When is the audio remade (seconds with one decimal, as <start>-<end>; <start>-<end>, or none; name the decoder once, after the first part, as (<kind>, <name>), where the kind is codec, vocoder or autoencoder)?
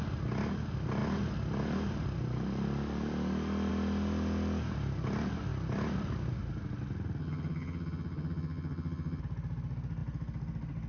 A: 7.2-9.2 (vocoder, HiFi-GAN)